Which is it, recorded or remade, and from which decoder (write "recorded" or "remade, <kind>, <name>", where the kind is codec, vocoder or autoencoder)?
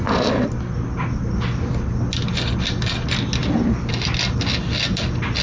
recorded